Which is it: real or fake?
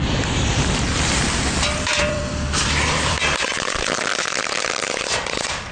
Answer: fake